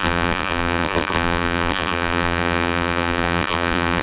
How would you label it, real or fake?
fake